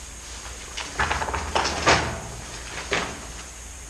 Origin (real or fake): real